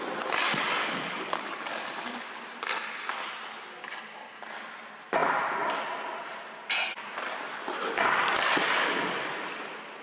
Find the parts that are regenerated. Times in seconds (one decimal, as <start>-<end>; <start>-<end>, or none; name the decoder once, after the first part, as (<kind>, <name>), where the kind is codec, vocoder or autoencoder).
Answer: 0.8-2.2 (codec, DAC)